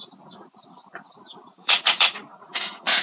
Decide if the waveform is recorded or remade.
remade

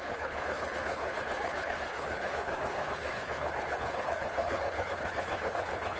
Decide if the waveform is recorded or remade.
remade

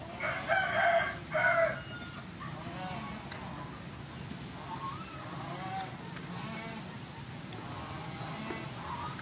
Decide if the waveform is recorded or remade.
recorded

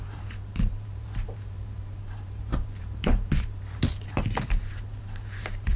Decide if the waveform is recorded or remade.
remade